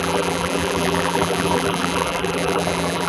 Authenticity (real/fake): fake